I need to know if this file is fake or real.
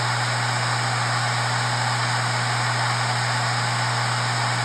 real